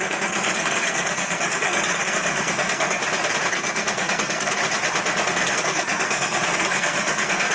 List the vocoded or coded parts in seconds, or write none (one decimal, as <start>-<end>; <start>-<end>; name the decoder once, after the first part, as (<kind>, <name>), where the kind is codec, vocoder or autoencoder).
0.0-3.0 (codec, SNAC); 3.5-4.6; 5.3-7.5